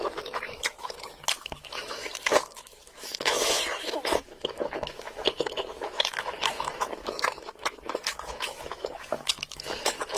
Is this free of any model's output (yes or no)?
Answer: no